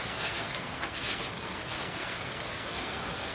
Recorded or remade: remade